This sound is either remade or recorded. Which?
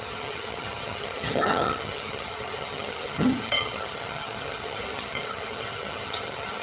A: remade